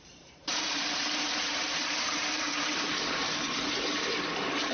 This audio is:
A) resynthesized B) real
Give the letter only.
A